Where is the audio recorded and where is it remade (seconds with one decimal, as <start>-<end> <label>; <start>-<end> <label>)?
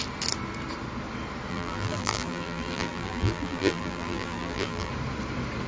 0.0-1.5 recorded; 1.5-4.9 remade; 4.9-5.7 recorded